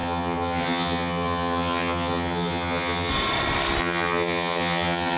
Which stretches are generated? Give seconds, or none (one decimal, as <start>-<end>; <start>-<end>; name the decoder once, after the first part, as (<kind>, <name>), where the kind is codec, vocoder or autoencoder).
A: 0.0-3.1 (vocoder, HiFi-GAN); 3.8-5.2